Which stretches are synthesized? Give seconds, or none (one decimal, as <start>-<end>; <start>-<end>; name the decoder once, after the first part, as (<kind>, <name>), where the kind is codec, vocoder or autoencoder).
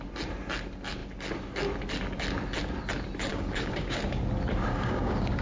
3.3-4.0 (codec, DAC); 4.7-5.4